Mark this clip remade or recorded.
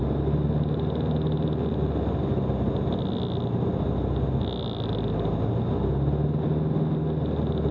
recorded